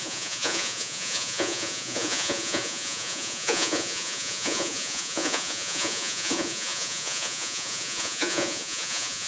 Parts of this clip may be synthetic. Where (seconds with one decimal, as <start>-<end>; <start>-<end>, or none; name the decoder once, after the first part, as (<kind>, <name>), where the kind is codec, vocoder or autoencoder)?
0.0-9.3 (vocoder, Vocos)